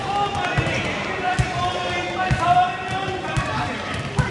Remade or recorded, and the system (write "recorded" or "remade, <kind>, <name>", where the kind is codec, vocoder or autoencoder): recorded